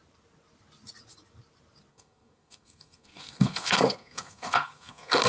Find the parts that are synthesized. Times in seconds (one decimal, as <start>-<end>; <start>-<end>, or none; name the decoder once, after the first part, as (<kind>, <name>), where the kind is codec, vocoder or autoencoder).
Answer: 1.9-5.3 (codec, SNAC)

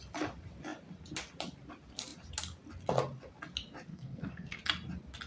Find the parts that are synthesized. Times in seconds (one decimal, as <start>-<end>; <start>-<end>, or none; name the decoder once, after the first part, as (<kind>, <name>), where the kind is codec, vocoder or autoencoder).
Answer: 3.9-4.6 (codec, SNAC)

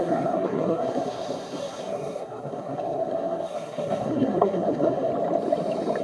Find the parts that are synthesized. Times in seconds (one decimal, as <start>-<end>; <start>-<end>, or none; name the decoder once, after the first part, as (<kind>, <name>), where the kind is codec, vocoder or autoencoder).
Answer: 0.0-5.1 (codec, SNAC)